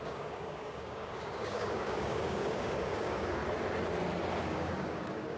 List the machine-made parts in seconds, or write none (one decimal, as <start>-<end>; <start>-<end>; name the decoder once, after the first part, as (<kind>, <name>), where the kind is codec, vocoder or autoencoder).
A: 0.0-3.4 (codec, DAC); 4.4-5.4